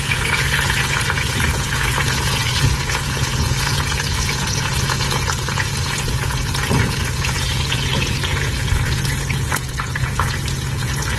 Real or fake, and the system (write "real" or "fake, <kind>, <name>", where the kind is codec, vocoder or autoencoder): fake, vocoder, Vocos